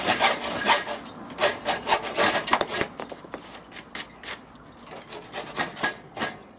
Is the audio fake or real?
real